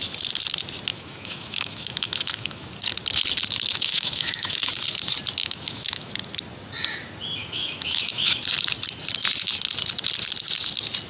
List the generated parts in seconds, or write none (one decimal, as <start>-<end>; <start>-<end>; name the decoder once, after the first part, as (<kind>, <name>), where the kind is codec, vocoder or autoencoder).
0.9-2.7 (autoencoder, DAC-VAE); 3.7-4.7; 5.4-6.1; 7.4-8.4